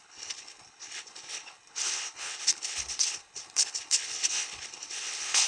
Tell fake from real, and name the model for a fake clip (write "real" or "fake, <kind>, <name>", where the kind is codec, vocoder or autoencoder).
fake, codec, HILCodec